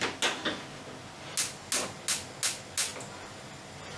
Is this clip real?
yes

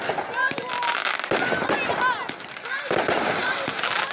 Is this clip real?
yes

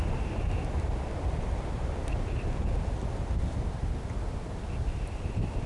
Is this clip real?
yes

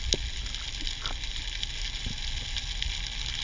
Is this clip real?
yes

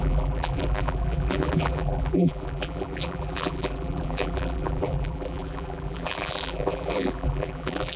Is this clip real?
no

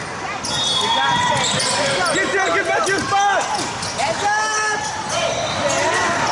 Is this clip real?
yes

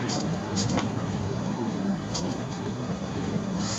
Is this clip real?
no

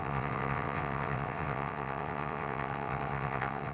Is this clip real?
no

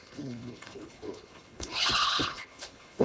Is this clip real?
no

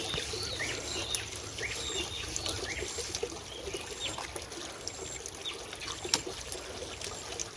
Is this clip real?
yes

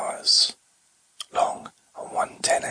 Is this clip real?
yes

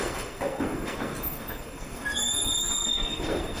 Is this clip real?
no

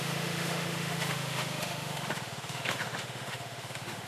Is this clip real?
no